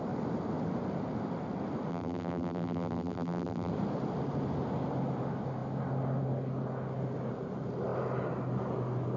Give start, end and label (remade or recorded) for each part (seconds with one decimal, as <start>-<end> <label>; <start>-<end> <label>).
0.0-1.9 recorded; 1.9-3.7 remade; 3.7-9.2 recorded